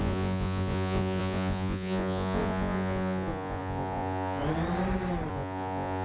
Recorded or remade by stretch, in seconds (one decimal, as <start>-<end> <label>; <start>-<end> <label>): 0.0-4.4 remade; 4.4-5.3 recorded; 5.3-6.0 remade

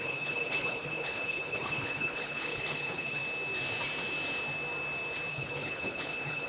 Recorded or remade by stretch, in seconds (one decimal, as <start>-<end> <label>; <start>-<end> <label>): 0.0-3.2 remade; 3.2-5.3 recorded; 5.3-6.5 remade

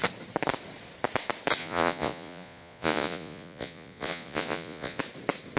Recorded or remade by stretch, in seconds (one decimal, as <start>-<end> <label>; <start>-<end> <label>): 0.0-1.6 recorded; 1.6-5.0 remade; 5.0-5.6 recorded

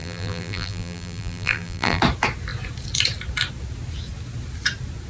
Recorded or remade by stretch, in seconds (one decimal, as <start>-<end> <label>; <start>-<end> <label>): 0.0-2.0 remade; 2.0-5.1 recorded

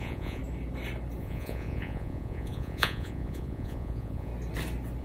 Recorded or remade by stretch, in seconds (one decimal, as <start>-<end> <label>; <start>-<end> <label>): 0.0-0.4 remade; 0.4-1.2 recorded; 1.2-4.3 remade; 4.3-5.0 recorded

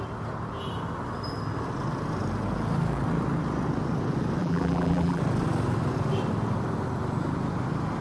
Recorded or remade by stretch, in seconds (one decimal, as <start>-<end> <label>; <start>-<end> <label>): 0.0-4.4 recorded; 4.4-5.2 remade; 5.2-8.0 recorded

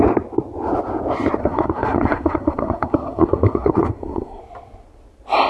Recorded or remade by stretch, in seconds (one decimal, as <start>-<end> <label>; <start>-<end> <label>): 0.0-1.4 recorded; 1.4-4.4 remade; 4.4-5.5 recorded

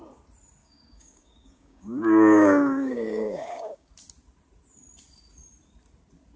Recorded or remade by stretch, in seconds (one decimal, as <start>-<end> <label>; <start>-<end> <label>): 0.0-0.6 recorded; 0.6-3.9 remade; 3.9-6.4 recorded